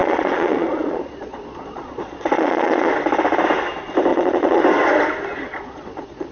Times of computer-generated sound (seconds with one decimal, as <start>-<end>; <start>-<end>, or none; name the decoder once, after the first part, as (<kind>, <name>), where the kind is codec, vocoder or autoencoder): 0.0-2.9 (vocoder, Vocos); 4.1-4.6; 5.3-6.3